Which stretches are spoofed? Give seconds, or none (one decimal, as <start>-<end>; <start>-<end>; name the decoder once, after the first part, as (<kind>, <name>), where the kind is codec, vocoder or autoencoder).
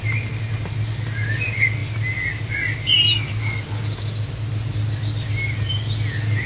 none